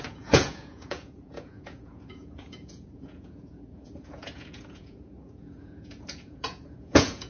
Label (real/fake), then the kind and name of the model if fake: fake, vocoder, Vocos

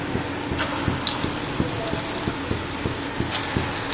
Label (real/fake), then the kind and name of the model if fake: real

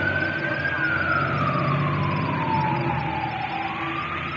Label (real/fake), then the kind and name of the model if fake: real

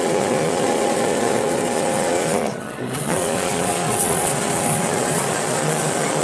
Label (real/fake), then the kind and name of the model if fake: fake, vocoder, Vocos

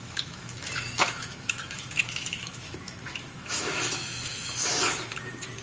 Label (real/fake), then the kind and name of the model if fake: fake, autoencoder, DAC-VAE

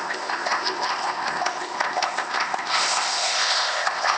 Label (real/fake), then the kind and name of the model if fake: fake, codec, ZipCodec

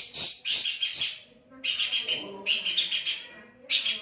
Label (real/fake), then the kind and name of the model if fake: real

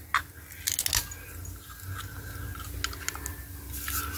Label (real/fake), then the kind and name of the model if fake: real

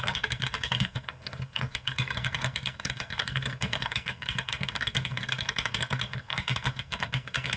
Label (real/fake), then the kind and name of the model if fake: fake, codec, SNAC